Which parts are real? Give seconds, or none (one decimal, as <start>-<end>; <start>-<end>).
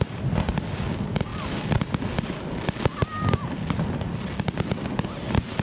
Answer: 0.0-5.6